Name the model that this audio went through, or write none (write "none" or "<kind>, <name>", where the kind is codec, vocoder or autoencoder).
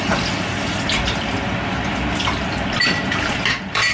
none